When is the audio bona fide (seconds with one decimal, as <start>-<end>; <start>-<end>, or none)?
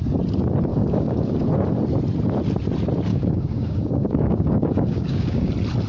0.0-0.7; 1.3-3.1; 5.5-5.9